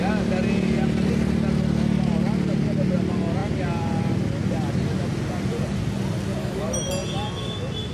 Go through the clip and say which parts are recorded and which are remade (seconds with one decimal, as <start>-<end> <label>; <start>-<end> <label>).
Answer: 0.0-6.4 recorded; 6.4-6.9 remade; 6.9-7.9 recorded